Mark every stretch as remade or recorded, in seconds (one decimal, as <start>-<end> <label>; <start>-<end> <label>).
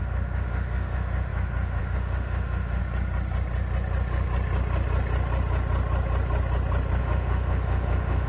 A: 0.0-2.8 remade; 2.8-7.0 recorded; 7.0-8.3 remade